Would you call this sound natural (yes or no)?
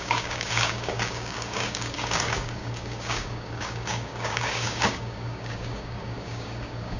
no